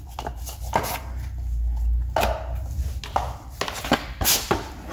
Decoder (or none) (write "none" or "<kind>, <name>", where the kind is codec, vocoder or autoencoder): none